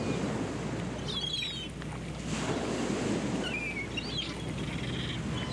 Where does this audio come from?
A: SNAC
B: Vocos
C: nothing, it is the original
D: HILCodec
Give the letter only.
C